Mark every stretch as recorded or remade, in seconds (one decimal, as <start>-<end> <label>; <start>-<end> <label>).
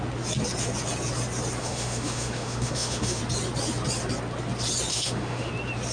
0.0-1.6 recorded; 1.6-3.2 remade; 3.2-4.9 recorded; 4.9-5.5 remade; 5.5-5.9 recorded